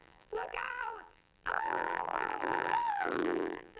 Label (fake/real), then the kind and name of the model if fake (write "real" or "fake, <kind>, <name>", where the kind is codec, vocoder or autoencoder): fake, vocoder, BigVGAN v2